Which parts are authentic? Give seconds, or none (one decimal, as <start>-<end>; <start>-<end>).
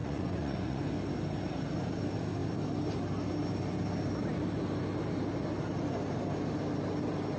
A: 0.8-7.4